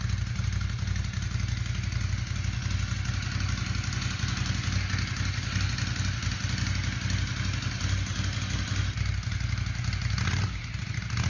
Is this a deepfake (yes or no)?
no